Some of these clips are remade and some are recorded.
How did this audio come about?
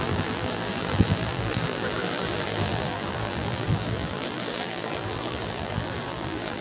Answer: remade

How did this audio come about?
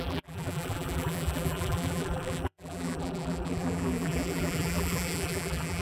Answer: remade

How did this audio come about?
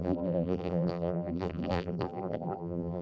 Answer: remade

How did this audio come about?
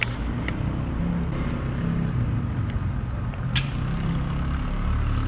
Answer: recorded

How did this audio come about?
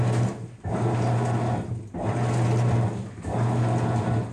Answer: remade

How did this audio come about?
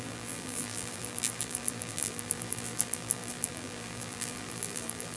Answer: remade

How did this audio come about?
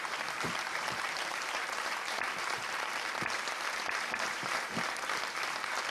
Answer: remade